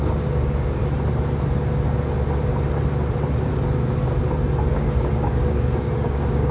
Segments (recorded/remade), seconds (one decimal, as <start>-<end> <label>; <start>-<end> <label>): 0.0-0.8 remade; 0.8-4.7 recorded; 4.7-6.5 remade

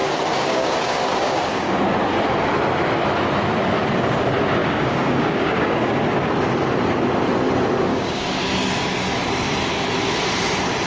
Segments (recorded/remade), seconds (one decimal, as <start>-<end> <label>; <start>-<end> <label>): 0.0-1.8 remade; 1.8-4.6 recorded; 4.6-6.0 remade; 6.0-7.9 recorded; 7.9-8.4 remade; 8.4-10.9 recorded

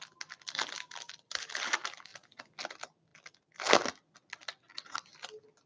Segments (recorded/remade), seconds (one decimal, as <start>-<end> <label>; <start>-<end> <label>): 0.0-5.7 recorded

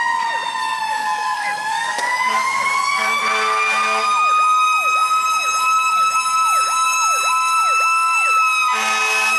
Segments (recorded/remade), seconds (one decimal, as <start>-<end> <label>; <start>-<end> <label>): 0.0-0.6 recorded; 0.6-3.2 remade; 3.2-9.4 recorded